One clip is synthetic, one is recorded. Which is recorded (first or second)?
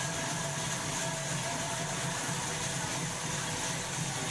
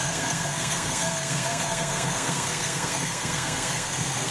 first